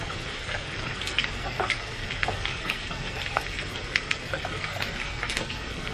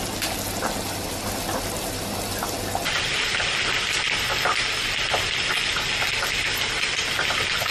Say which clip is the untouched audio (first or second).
second